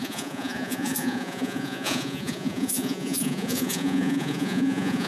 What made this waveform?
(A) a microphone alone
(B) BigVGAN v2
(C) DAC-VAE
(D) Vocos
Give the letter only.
D